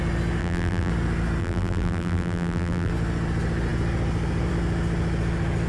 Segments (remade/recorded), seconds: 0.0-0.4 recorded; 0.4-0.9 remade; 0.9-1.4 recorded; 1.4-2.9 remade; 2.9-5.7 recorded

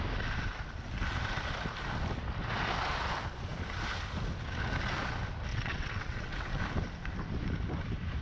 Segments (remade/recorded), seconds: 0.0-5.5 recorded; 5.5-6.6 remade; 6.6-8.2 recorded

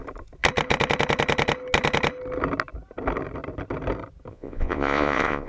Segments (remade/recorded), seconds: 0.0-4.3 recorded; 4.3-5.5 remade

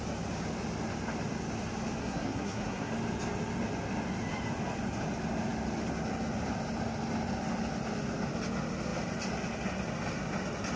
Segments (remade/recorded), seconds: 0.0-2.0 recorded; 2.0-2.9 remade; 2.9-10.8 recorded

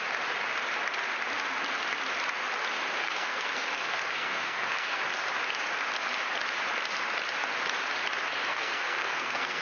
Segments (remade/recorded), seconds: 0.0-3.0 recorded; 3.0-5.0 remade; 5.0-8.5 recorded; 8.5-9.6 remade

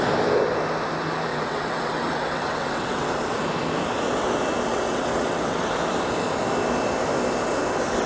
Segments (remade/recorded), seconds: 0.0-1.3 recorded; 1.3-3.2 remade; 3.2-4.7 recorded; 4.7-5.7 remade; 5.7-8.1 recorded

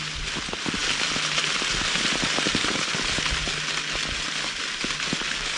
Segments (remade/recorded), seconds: 0.0-5.6 recorded

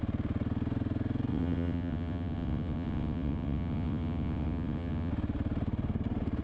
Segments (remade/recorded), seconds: 0.0-1.3 recorded; 1.3-5.1 remade; 5.1-6.4 recorded